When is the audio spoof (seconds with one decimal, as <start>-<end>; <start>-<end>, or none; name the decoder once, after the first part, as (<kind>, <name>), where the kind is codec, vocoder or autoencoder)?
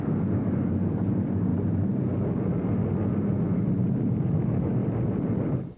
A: 0.0-1.5 (codec, DAC); 4.2-4.8